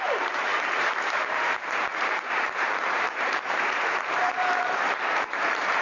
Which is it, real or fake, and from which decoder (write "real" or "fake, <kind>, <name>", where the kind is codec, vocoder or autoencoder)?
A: fake, vocoder, BigVGAN v2